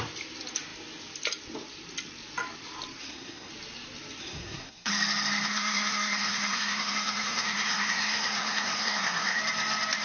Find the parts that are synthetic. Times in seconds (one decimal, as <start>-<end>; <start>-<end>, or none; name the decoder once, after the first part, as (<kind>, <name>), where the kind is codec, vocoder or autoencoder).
3.0-3.5 (codec, SNAC); 4.2-4.9; 5.5-9.4